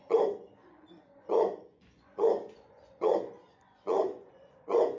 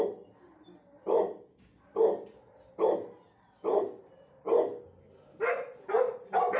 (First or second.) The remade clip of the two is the first